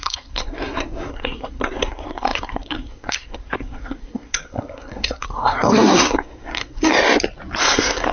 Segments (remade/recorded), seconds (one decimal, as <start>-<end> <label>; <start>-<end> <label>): 0.0-6.9 remade; 6.9-7.6 recorded; 7.6-8.1 remade